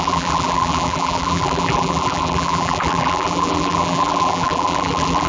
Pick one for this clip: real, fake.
fake